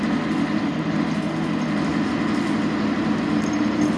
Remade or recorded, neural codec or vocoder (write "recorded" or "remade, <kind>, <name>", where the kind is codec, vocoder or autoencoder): recorded